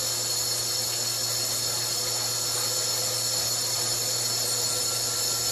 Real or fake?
real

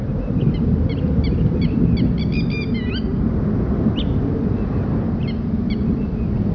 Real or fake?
real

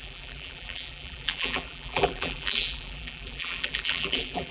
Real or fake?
fake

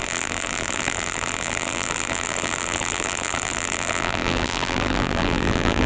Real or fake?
fake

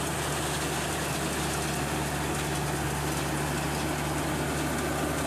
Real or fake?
real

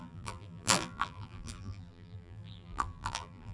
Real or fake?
fake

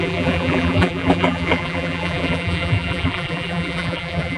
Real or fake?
fake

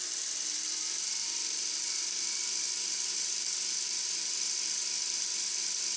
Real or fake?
fake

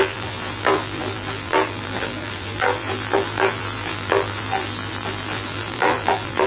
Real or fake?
fake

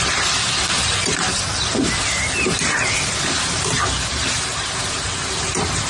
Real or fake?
real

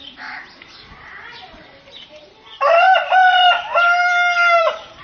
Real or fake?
fake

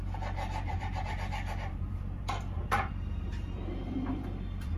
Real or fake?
fake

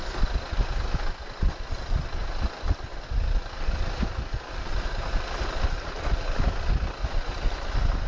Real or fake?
real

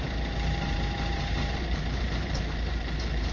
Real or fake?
fake